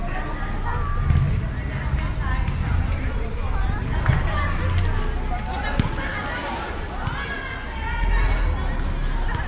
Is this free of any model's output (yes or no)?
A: yes